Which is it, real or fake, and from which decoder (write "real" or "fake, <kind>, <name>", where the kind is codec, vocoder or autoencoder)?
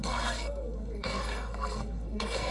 fake, codec, SNAC